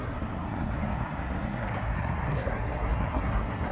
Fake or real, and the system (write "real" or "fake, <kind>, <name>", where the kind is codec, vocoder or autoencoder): fake, codec, SNAC